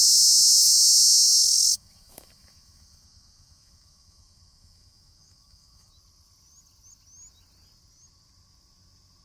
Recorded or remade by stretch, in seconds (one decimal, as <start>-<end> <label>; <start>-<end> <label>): 0.0-1.5 recorded; 1.5-5.9 remade; 5.9-9.2 recorded